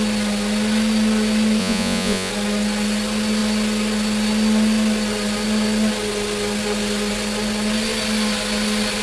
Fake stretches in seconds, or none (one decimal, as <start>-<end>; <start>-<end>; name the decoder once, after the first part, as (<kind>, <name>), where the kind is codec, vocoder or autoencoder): 1.6-2.3 (vocoder, Vocos)